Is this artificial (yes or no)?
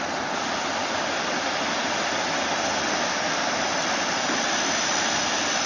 no